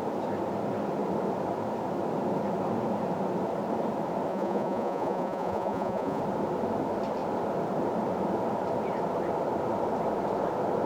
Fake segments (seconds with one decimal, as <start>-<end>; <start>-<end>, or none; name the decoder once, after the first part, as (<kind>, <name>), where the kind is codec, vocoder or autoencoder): 4.3-6.2 (vocoder, Vocos)